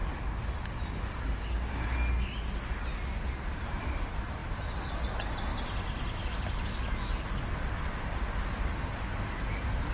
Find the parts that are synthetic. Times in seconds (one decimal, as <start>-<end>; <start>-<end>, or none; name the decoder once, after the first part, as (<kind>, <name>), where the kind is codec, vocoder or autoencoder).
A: none